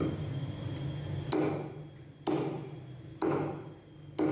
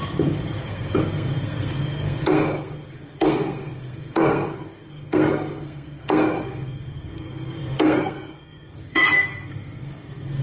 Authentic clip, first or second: first